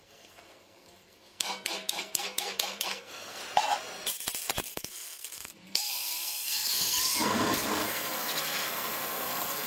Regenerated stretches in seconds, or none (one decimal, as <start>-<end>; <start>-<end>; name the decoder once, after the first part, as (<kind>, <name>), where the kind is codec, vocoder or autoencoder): 0.0-3.4 (codec, SNAC); 4.7-9.7